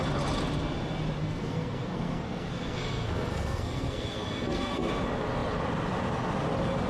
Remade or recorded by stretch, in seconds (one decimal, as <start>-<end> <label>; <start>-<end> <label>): 0.0-1.2 recorded; 1.2-4.9 remade; 4.9-6.9 recorded